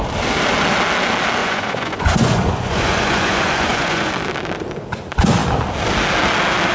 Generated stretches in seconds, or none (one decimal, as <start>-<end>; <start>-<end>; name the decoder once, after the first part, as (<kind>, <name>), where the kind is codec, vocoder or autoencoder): 1.4-4.1 (vocoder, Vocos)